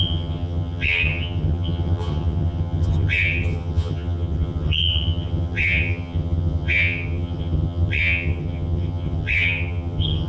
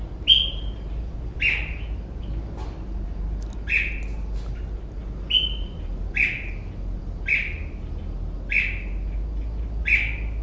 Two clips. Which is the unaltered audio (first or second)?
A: second